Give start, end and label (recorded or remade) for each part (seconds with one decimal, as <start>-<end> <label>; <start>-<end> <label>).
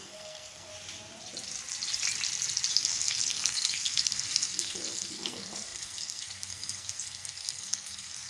0.0-0.7 remade; 0.7-2.7 recorded; 2.7-8.3 remade